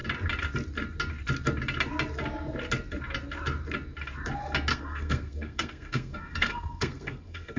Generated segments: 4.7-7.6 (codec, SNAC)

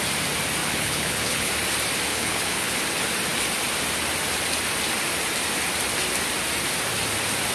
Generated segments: 0.6-1.5 (codec, HILCodec); 2.1-2.7

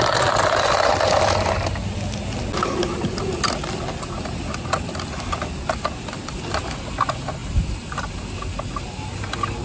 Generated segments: none

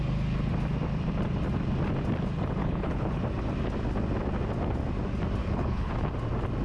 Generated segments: 2.6-3.2 (codec, HILCodec); 5.4-5.9

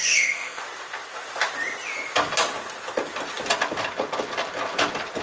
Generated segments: 0.0-0.6 (codec, ZipCodec)

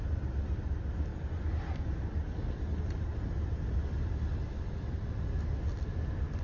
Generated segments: none

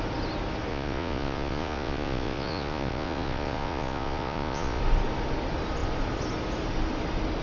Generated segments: 0.7-4.8 (vocoder, Vocos)